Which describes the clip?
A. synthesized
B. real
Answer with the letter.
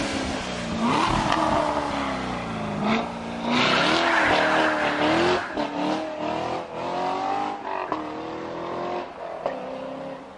B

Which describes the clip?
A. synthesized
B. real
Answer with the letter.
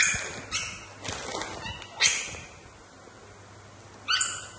B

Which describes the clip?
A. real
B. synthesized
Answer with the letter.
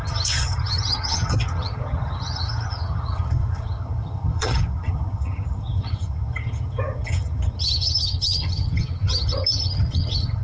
B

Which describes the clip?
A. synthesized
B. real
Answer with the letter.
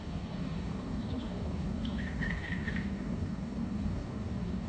A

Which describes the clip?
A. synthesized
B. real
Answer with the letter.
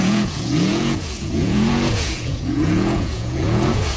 A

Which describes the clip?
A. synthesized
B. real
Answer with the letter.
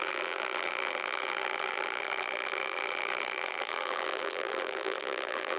A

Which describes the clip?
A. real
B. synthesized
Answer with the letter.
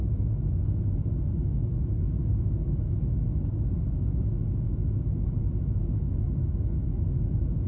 B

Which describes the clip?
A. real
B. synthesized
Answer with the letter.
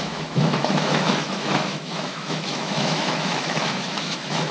B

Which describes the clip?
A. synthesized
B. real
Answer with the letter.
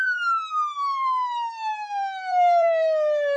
A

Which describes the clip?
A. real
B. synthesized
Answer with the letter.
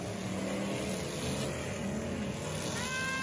A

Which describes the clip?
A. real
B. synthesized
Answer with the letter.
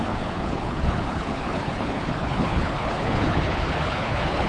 B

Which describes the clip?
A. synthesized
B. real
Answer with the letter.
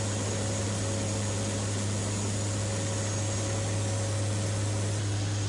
B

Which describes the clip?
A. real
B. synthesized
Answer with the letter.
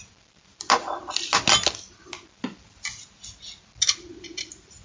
A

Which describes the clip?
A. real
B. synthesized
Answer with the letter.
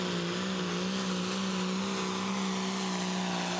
A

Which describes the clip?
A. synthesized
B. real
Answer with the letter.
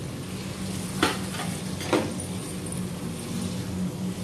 B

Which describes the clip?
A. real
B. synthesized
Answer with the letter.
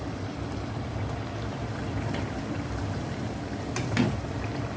B